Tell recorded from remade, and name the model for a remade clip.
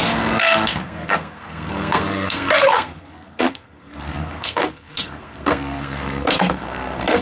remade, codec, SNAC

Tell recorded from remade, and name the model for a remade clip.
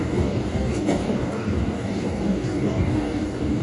remade, codec, DAC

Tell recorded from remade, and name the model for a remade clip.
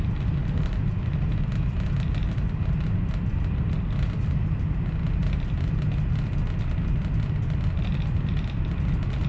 recorded